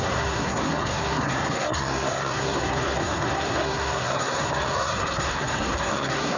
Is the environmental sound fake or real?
fake